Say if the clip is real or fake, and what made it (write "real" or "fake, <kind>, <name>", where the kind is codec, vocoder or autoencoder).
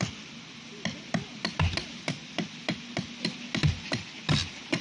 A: real